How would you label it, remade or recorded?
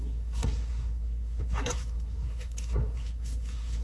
remade